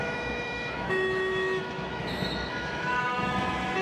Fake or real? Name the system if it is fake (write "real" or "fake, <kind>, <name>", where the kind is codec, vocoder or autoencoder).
fake, autoencoder, DAC-VAE